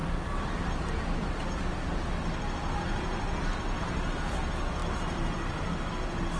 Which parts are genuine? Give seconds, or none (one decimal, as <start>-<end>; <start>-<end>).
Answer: 0.0-6.4